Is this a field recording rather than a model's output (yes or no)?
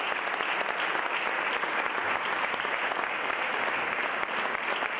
yes